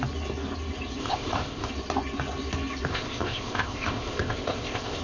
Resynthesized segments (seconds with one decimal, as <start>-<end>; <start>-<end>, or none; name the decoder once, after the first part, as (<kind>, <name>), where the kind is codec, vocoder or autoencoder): 1.0-1.7 (codec, ZipCodec); 2.9-5.0